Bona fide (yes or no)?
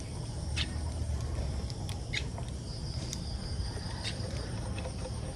no